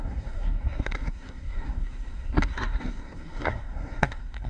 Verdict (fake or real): fake